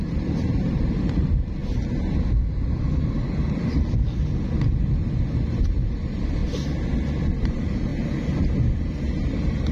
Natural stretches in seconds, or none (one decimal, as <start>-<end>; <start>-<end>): 1.6-4.8; 6.4-7.4; 7.9-8.7